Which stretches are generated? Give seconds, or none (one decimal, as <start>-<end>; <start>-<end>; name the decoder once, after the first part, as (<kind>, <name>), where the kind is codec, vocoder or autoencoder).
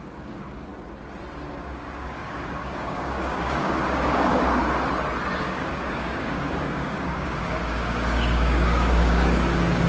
0.0-0.7 (codec, DAC); 1.5-4.6; 5.4-9.9